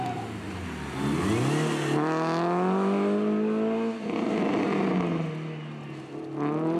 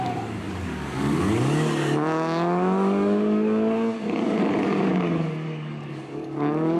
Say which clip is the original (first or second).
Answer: first